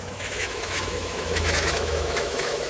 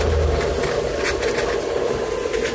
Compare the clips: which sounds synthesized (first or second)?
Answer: first